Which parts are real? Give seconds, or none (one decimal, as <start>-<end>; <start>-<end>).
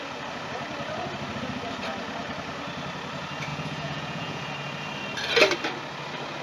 0.0-3.5; 4.5-6.4